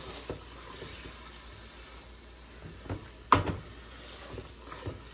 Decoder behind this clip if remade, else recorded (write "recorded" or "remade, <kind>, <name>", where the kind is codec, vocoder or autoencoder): recorded